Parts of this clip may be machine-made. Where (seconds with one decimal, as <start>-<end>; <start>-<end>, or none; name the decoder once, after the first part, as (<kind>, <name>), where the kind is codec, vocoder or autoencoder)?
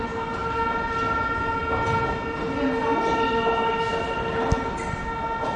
none